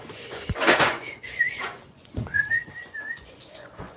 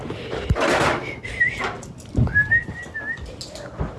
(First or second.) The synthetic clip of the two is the first